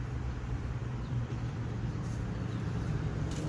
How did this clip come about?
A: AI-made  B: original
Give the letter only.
A